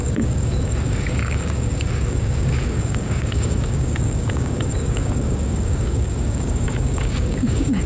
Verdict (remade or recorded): remade